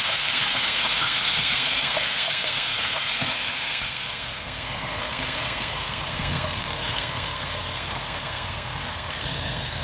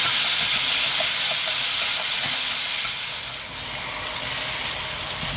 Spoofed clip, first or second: first